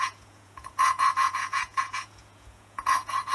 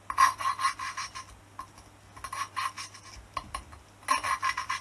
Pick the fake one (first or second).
first